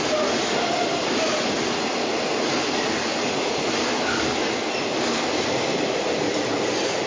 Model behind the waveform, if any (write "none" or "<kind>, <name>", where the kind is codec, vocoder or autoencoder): none